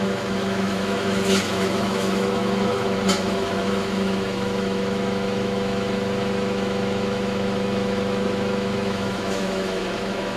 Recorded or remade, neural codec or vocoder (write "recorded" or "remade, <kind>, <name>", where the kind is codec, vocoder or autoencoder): remade, autoencoder, DAC-VAE